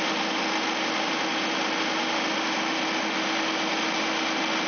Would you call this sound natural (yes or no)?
yes